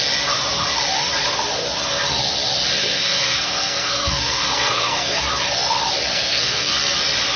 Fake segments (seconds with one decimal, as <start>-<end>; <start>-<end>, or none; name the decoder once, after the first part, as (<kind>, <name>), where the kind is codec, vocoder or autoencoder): 2.8-5.2 (codec, SNAC); 6.1-6.7